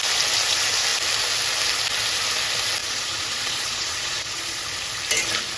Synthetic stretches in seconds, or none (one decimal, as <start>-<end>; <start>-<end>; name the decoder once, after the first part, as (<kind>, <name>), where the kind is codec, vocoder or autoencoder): 2.8-4.6 (vocoder, Vocos)